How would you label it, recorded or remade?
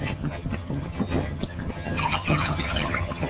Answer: remade